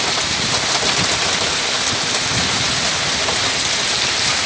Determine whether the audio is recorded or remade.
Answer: recorded